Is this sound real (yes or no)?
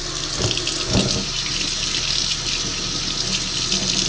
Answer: yes